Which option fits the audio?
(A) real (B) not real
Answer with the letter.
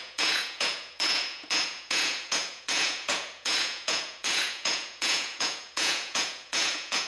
B